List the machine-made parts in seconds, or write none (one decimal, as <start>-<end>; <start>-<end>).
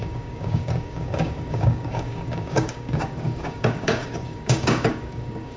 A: 0.0-5.6